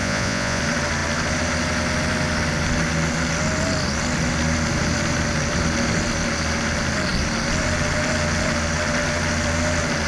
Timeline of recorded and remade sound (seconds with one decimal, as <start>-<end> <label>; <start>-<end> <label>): 0.0-0.6 remade; 0.6-10.1 recorded